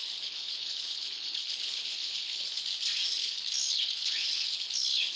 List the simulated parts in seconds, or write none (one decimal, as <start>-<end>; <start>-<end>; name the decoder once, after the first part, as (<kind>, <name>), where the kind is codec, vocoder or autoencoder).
0.0-2.6 (codec, HILCodec); 3.1-5.2